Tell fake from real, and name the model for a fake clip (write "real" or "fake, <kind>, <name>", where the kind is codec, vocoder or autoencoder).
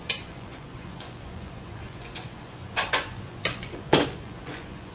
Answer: fake, vocoder, Vocos